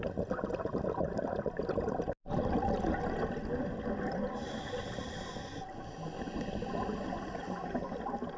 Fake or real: real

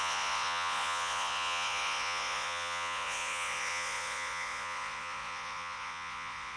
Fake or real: fake